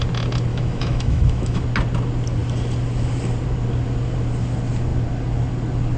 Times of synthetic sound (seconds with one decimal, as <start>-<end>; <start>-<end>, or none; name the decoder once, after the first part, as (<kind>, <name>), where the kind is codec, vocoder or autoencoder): 0.5-1.6 (autoencoder, DAC-VAE)

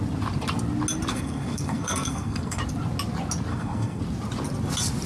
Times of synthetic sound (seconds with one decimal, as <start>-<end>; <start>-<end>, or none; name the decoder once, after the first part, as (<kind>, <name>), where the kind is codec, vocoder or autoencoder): 1.1-2.6 (codec, SNAC); 3.5-4.0

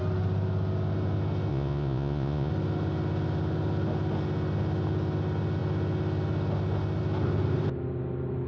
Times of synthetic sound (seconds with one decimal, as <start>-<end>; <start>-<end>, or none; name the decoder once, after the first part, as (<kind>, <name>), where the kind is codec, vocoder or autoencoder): 1.5-2.5 (vocoder, Vocos)

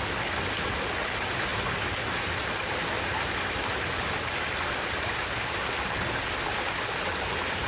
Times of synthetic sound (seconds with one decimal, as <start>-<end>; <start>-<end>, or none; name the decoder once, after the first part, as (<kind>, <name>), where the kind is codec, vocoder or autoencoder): none

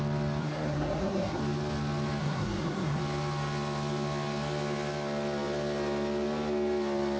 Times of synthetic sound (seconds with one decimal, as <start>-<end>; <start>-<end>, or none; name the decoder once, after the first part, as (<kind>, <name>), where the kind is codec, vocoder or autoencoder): 0.4-1.4 (codec, SNAC); 2.2-3.0

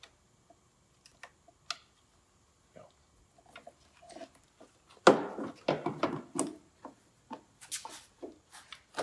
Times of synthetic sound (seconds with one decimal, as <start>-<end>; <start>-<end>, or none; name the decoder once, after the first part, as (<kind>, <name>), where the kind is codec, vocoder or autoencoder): none